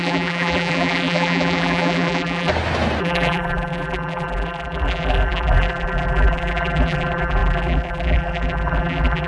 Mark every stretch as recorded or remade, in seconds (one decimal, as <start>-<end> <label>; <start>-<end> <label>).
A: 0.0-2.5 remade; 2.5-3.0 recorded; 3.0-9.3 remade